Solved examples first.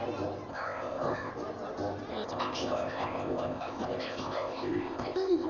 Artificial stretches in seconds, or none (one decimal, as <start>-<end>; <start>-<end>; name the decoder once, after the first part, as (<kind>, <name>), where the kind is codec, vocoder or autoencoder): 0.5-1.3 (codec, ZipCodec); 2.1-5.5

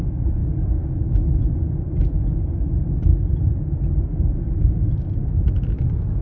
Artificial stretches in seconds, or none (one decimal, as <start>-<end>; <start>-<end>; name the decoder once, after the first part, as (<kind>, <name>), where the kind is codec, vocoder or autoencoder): 0.0-3.1 (codec, DAC); 4.0-5.2

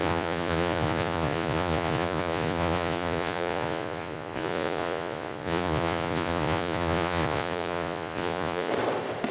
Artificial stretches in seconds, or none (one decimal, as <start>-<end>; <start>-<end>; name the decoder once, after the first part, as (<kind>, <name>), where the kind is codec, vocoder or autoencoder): 0.0-8.7 (vocoder, Vocos)

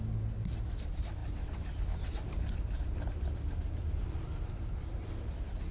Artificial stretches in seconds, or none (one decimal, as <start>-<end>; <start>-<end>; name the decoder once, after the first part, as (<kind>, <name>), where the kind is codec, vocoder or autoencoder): none

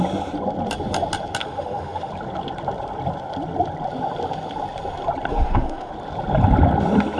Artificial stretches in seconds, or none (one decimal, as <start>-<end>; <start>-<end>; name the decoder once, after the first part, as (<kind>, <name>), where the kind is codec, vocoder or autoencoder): 1.4-2.1 (autoencoder, DAC-VAE); 5.3-5.9